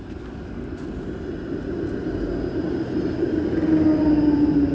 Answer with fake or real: real